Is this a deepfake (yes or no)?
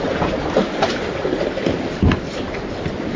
yes